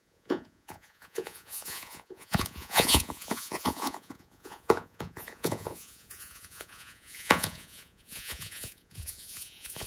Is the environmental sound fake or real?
fake